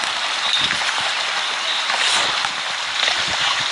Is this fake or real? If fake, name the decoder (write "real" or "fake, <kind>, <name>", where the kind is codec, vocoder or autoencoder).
real